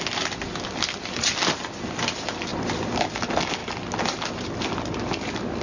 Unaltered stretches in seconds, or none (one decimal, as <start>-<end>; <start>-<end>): 0.0-5.6